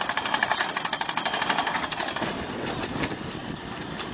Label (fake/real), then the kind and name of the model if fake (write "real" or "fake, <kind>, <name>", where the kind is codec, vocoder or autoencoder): real